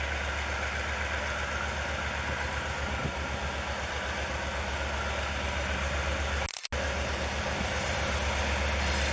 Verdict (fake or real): real